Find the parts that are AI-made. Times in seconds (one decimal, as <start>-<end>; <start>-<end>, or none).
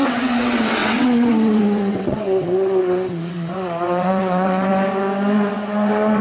0.0-4.7; 5.5-6.2